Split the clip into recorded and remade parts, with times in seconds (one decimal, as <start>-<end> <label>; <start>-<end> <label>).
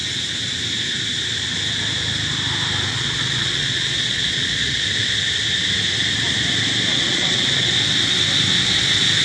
0.0-2.9 recorded; 2.9-4.8 remade; 4.8-6.9 recorded; 6.9-7.7 remade; 7.7-9.2 recorded